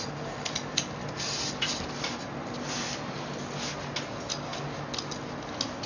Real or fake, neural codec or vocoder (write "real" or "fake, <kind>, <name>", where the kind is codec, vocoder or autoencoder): real